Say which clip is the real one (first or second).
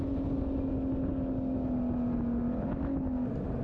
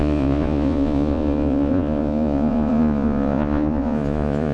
first